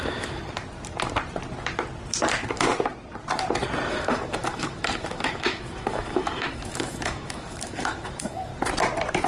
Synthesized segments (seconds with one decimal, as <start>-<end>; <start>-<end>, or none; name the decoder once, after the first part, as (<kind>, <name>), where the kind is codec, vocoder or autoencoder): 0.0-0.4 (autoencoder, DAC-VAE); 3.9-8.5